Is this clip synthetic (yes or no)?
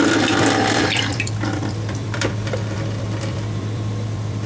yes